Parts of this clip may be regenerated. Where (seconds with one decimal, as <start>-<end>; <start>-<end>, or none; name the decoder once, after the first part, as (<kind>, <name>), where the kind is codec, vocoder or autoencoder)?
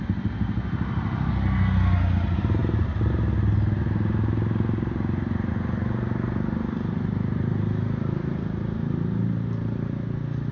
none